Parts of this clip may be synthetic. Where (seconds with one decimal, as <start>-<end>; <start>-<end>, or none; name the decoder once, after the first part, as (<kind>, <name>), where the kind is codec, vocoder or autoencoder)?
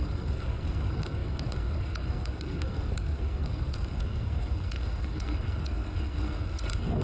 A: 0.0-7.0 (codec, SNAC)